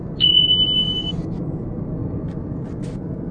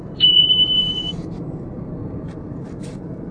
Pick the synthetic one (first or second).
second